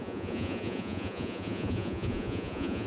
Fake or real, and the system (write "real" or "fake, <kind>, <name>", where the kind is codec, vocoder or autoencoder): fake, vocoder, Vocos